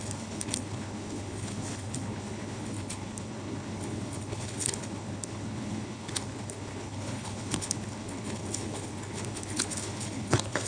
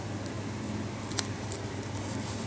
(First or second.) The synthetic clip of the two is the first